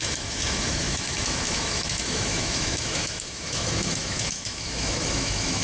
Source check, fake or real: fake